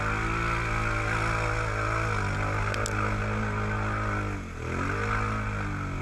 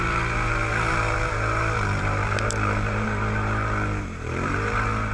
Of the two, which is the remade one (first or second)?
second